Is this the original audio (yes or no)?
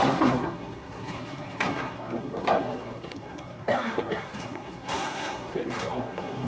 no